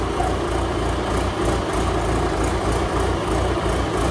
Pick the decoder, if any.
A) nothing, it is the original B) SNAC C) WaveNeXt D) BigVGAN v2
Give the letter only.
A